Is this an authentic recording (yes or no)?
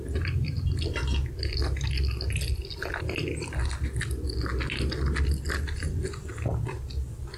yes